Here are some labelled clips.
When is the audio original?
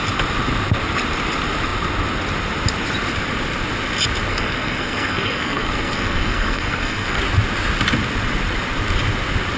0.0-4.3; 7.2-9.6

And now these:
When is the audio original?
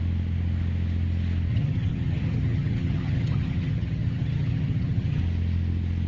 0.0-1.5; 5.2-6.1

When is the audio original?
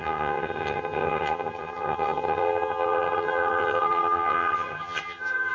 none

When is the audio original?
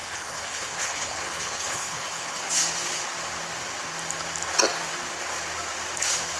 2.4-6.4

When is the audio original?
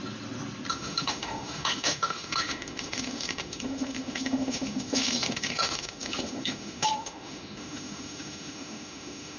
0.0-0.7